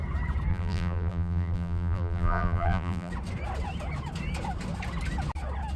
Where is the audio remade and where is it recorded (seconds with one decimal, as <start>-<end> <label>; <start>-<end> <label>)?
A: 0.0-0.5 recorded; 0.5-3.1 remade; 3.1-5.8 recorded